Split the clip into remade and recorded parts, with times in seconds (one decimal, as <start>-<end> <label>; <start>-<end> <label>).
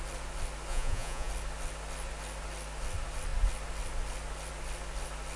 0.0-0.7 recorded; 0.7-1.3 remade; 1.3-5.4 recorded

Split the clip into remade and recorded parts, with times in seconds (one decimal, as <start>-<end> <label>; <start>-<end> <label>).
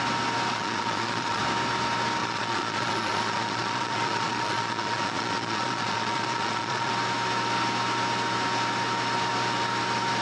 0.0-0.5 recorded; 0.5-1.4 remade; 1.4-2.2 recorded; 2.2-6.9 remade; 6.9-10.2 recorded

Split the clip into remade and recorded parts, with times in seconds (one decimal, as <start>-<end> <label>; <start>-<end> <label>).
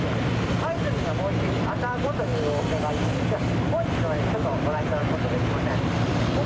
0.0-6.5 recorded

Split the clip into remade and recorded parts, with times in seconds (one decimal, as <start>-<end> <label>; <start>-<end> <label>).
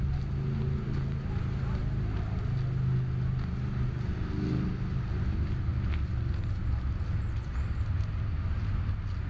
0.0-9.3 recorded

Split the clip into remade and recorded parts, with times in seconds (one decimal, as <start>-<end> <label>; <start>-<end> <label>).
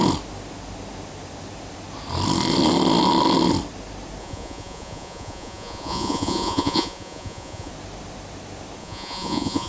0.0-4.2 recorded; 4.2-7.7 remade; 7.7-8.8 recorded; 8.8-9.7 remade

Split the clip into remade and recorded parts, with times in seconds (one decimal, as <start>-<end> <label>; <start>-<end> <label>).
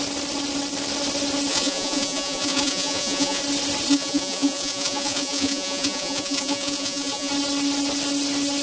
0.0-1.5 recorded; 1.5-3.4 remade; 3.4-3.9 recorded; 3.9-7.3 remade; 7.3-8.6 recorded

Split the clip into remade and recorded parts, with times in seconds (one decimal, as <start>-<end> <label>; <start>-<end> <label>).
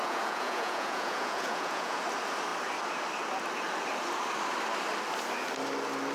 0.0-2.0 remade; 2.0-6.1 recorded